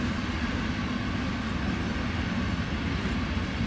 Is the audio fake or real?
real